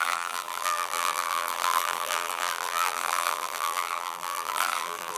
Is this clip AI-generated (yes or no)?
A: yes